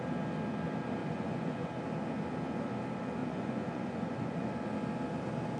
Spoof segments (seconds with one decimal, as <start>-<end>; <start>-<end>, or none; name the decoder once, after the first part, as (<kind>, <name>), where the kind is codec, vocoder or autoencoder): 1.0-1.7 (vocoder, Vocos); 3.2-4.5